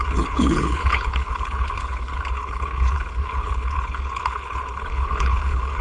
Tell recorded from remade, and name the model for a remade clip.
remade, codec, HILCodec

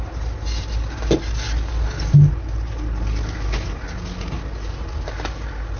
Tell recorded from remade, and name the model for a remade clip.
recorded